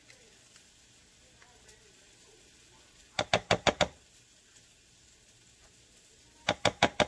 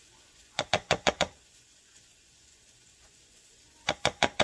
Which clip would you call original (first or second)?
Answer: first